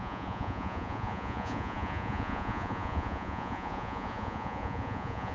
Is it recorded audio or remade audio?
remade